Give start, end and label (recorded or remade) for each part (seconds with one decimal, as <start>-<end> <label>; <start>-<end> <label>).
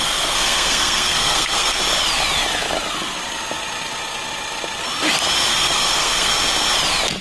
0.0-1.8 remade; 1.8-5.5 recorded; 5.5-6.4 remade; 6.4-7.2 recorded